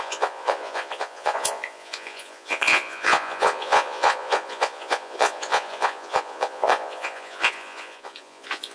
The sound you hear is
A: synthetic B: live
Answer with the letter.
A